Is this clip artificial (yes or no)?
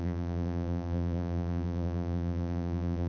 yes